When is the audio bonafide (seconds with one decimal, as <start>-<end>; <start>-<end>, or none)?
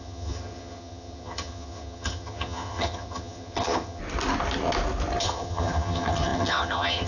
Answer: 4.0-5.2